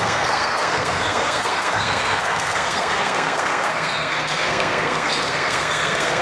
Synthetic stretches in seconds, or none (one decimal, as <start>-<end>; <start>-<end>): 0.0-6.2